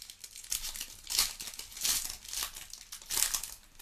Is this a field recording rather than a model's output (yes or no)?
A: yes